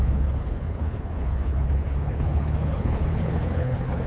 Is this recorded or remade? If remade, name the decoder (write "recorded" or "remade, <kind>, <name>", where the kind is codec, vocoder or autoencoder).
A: remade, codec, HILCodec